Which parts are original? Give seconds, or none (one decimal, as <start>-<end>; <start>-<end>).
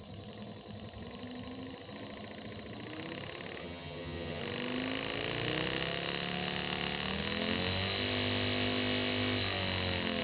0.0-3.6; 4.4-10.2